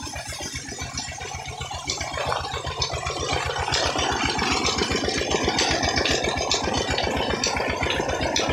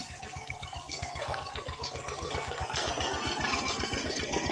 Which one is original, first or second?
first